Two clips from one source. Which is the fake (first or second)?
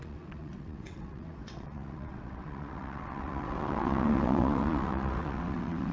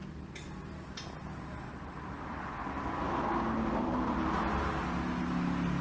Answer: first